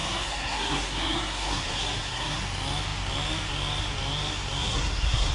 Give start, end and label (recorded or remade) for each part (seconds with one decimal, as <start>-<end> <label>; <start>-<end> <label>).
0.0-2.4 remade; 2.4-4.6 recorded; 4.6-5.3 remade